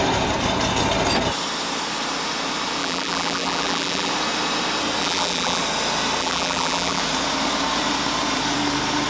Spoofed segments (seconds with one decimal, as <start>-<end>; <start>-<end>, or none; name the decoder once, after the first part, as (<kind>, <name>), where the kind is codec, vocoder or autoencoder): 2.8-4.1 (vocoder, BigVGAN v2); 5.0-5.6; 6.2-7.0